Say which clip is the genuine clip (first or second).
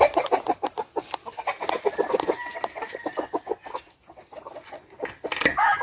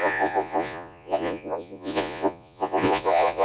first